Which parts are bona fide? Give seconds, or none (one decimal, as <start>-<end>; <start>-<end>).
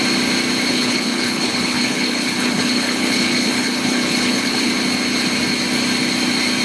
0.0-0.7; 4.7-6.6